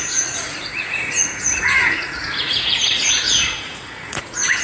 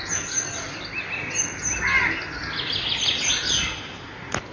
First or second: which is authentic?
second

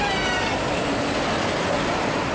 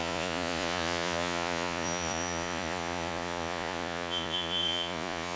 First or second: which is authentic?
first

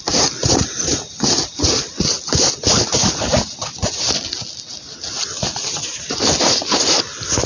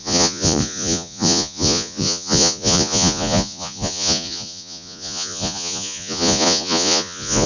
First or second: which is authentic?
first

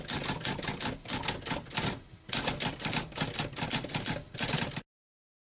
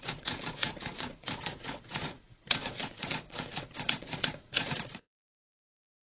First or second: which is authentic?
first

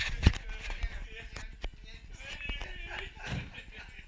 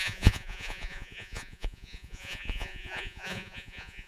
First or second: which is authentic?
first